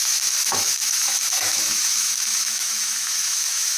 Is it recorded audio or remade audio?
remade